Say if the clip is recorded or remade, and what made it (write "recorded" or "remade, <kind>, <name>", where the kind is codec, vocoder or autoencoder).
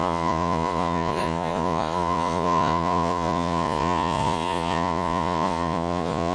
remade, vocoder, Vocos